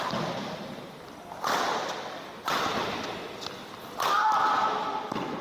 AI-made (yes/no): no